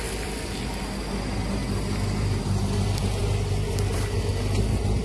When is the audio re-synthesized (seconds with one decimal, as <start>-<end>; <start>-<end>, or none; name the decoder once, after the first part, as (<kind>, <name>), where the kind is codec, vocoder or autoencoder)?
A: none

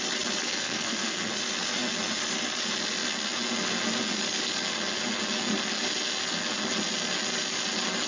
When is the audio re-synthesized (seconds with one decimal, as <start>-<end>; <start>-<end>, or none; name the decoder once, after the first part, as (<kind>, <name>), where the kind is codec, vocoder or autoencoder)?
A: 0.4-1.3 (codec, SNAC)

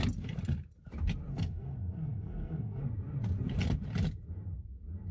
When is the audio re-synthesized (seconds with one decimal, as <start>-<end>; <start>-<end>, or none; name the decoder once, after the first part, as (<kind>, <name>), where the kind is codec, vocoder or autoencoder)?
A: 1.3-2.8 (codec, SNAC)

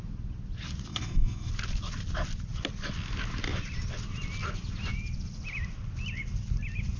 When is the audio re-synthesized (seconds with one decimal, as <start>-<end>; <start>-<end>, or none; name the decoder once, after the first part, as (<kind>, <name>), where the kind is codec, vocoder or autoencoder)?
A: 0.9-1.5 (codec, SNAC)